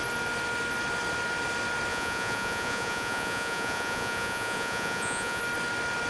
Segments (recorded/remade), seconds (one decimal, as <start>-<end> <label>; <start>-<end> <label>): 0.0-1.9 recorded; 1.9-5.4 remade; 5.4-6.1 recorded